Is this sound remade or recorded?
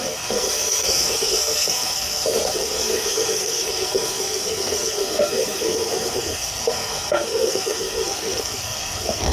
remade